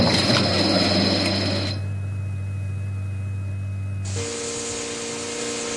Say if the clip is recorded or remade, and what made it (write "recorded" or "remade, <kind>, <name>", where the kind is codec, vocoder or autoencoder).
recorded